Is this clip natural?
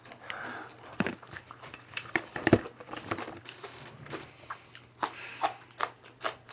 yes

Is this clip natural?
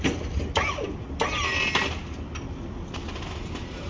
yes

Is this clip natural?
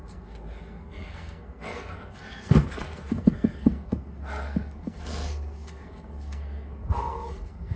no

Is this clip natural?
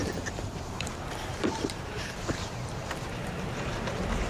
no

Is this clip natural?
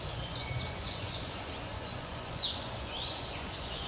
no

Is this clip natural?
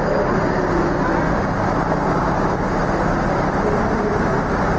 yes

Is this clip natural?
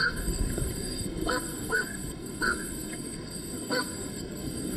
no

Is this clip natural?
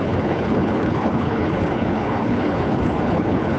no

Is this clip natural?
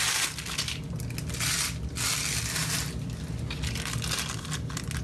yes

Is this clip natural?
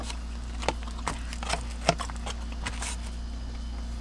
yes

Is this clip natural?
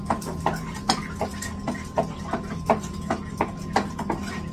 yes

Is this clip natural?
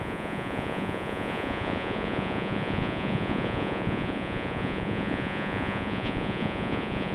no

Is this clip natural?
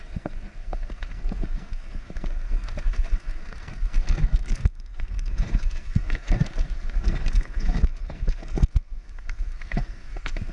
no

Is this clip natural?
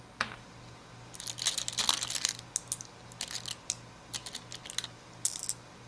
yes